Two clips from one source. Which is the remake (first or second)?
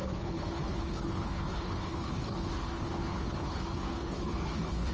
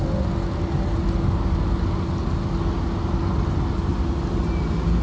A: first